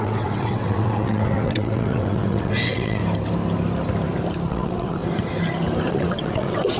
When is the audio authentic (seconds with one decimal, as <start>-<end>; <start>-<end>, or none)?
3.0-4.5; 5.0-5.9

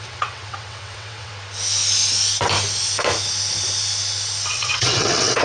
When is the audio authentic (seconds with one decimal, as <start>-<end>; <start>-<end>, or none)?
1.3-4.5